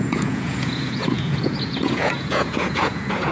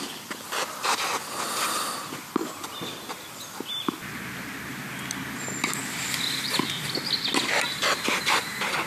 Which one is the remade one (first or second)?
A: first